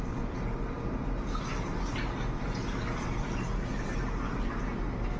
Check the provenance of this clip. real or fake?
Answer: real